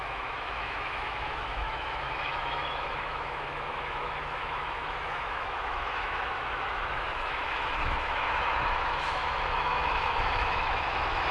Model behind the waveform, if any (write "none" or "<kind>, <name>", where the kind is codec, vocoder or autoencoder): autoencoder, DAC-VAE